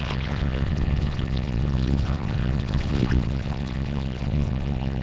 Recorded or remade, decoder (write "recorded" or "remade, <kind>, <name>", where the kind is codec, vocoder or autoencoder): remade, vocoder, WaveNeXt